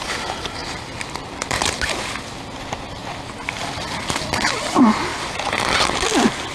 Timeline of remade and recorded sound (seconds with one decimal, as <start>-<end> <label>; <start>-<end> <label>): 0.0-0.6 recorded; 0.6-1.6 remade; 1.6-6.5 recorded